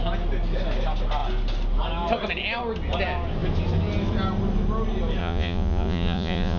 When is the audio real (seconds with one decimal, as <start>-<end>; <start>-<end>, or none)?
0.0-5.2